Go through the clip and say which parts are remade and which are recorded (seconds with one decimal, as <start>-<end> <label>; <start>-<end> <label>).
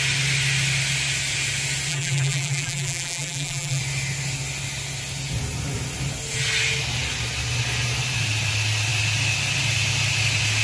0.0-1.9 recorded; 1.9-3.8 remade; 3.8-10.6 recorded